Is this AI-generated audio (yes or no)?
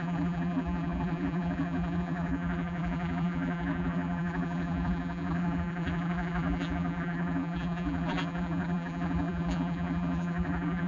yes